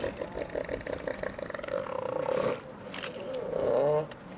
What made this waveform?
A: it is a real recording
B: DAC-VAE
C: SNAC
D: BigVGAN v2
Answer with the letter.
A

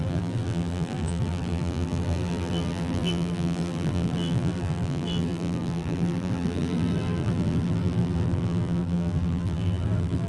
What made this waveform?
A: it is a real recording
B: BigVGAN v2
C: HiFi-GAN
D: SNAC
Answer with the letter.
B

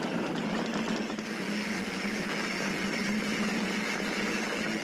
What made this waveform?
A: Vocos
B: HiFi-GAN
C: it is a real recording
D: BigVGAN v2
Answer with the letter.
C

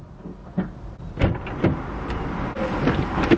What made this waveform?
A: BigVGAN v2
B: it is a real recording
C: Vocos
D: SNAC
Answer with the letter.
B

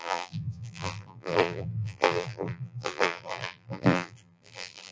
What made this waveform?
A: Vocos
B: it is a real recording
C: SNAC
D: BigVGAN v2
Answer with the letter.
D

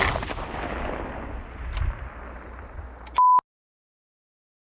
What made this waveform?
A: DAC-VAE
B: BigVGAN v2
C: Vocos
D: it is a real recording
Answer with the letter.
D